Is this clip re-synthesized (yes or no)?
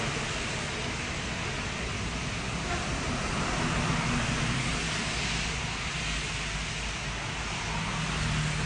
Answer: no